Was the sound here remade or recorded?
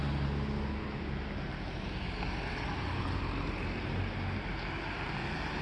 recorded